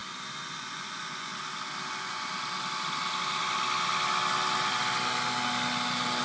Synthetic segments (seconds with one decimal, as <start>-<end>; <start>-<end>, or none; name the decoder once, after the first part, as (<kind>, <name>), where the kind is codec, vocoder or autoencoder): 0.6-1.3 (vocoder, Vocos); 1.9-2.3